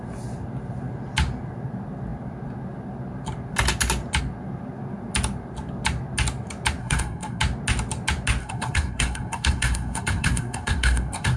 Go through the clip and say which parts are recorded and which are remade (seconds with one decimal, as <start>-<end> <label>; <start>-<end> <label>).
0.0-6.8 recorded; 6.8-7.4 remade; 7.4-8.4 recorded; 8.4-11.4 remade